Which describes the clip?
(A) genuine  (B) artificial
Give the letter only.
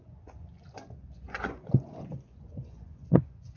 B